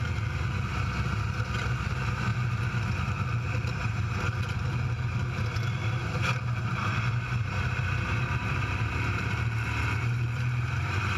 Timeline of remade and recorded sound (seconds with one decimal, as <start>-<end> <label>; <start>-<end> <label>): 0.0-0.7 recorded; 0.7-1.2 remade; 1.2-5.8 recorded; 5.8-11.2 remade